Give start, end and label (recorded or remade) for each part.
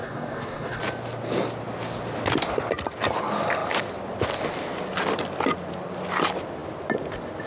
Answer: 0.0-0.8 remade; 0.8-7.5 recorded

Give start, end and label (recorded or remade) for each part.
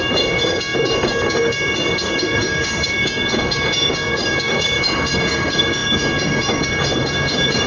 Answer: 0.0-7.7 remade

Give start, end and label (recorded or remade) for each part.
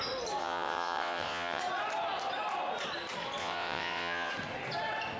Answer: 0.0-0.4 recorded; 0.4-1.6 remade; 1.6-3.4 recorded; 3.4-4.3 remade; 4.3-5.2 recorded